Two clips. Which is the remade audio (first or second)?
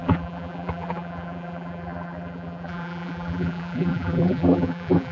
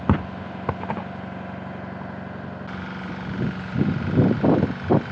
first